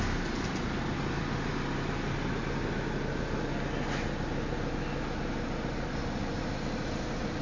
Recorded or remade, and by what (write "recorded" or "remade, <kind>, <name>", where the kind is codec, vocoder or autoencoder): recorded